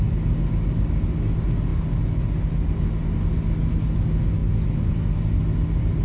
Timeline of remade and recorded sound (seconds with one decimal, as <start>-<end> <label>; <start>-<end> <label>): 0.0-6.0 recorded